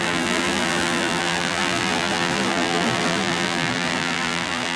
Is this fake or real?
fake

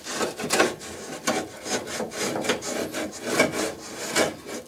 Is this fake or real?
real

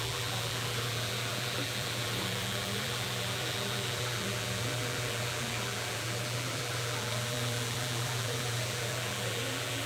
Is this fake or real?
fake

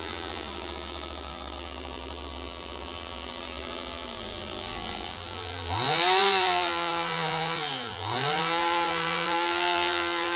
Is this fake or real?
fake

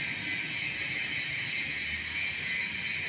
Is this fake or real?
real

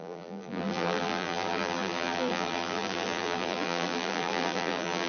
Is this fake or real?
fake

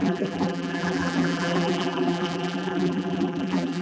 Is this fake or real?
fake